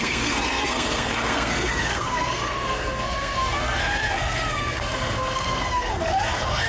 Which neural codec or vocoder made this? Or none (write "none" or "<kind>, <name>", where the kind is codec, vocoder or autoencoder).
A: codec, SNAC